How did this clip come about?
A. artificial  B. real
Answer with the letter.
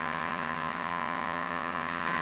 A